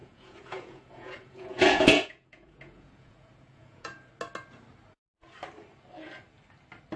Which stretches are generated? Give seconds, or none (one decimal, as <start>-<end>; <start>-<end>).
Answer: 0.0-4.1